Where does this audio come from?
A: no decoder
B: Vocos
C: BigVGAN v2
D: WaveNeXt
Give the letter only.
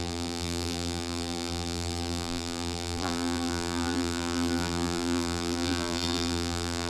C